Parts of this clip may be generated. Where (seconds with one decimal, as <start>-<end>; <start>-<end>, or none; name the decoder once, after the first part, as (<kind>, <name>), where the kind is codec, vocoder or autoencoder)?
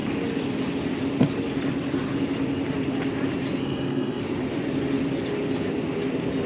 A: 3.6-4.2 (codec, SNAC)